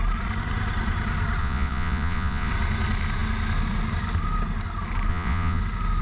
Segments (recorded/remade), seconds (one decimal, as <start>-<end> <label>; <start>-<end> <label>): 0.0-1.4 recorded; 1.4-2.5 remade; 2.5-5.1 recorded; 5.1-5.6 remade; 5.6-6.0 recorded